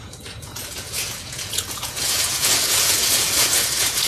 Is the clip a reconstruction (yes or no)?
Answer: yes